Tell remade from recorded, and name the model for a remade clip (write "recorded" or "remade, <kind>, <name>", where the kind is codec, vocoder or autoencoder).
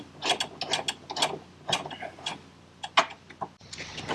recorded